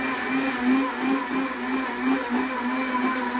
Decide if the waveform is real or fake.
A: real